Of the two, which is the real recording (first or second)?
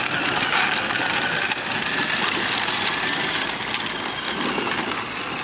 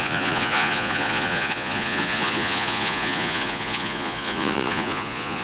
first